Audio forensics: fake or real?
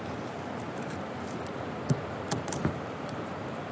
fake